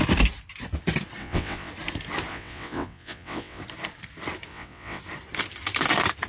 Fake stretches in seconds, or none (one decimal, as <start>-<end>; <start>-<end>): 1.2-1.7; 2.3-3.6; 4.5-5.0